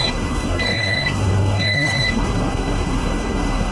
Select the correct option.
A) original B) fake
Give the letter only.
B